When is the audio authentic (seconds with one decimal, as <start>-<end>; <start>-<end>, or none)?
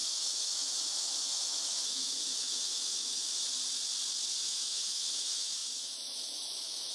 3.4-4.4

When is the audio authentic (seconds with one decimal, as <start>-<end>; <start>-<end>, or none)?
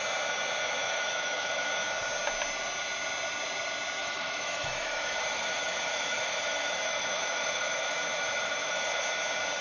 0.0-0.8; 1.7-4.0; 9.0-9.6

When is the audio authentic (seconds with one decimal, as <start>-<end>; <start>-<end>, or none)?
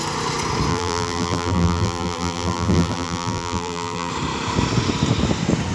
0.0-0.7; 4.1-5.7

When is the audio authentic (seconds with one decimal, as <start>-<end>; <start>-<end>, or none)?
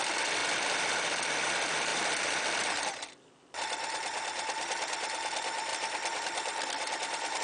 0.0-0.4; 1.5-1.9; 2.7-7.4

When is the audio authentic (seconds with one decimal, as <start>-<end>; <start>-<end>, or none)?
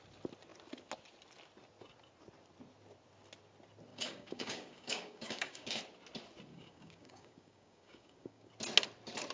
0.0-3.9; 5.8-6.5; 8.5-9.3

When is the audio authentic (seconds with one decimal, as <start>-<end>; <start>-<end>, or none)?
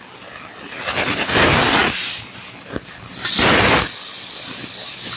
0.0-5.2